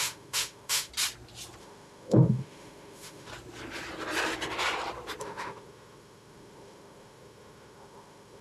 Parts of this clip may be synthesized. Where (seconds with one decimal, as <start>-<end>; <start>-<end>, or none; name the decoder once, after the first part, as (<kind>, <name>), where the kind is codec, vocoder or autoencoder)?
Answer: 0.0-0.9 (autoencoder, DAC-VAE); 1.6-3.3; 5.2-8.4